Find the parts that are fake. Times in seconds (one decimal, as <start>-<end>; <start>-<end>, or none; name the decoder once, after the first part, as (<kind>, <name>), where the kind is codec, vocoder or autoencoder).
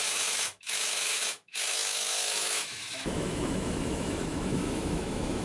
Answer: 0.0-5.4 (autoencoder, DAC-VAE)